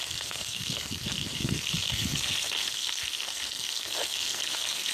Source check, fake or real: fake